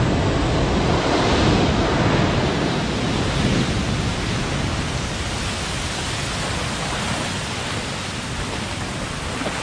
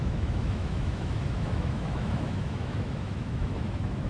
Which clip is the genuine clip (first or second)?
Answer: first